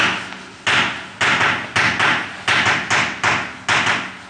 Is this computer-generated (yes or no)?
no